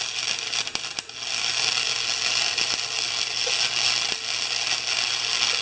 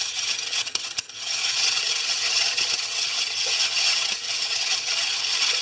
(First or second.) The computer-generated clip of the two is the second